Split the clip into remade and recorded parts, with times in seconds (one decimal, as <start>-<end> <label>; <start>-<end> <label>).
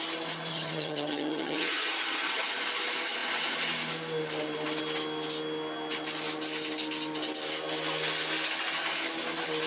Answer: 0.0-0.5 recorded; 0.5-2.5 remade; 2.5-9.7 recorded